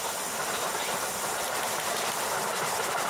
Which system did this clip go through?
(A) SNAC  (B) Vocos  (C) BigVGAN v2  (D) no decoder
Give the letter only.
D